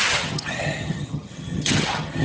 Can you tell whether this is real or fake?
fake